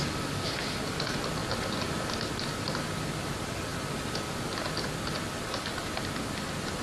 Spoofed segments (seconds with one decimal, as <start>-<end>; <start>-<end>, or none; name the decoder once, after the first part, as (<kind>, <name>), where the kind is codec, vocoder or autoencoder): none